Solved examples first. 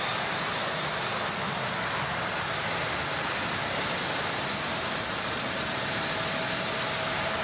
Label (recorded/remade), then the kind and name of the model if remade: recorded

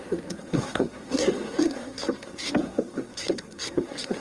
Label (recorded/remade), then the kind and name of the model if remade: remade, codec, SNAC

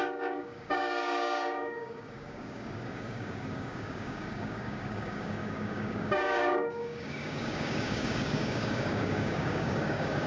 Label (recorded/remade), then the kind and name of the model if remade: remade, codec, DAC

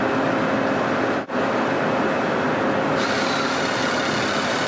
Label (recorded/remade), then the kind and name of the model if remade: recorded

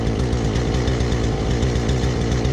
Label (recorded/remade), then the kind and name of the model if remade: recorded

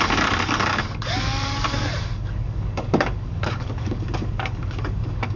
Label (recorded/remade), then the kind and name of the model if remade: remade, codec, DAC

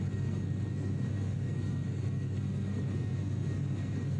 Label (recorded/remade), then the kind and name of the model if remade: remade, codec, SNAC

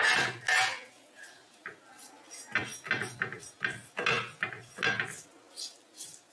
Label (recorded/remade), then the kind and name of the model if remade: recorded